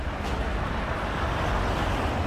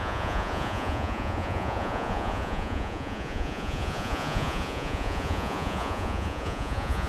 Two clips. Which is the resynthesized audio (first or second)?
second